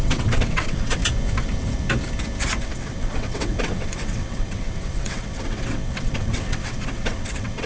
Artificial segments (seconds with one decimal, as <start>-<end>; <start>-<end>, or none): 0.0-1.0; 2.6-7.7